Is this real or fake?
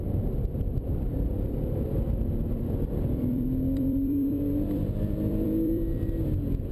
fake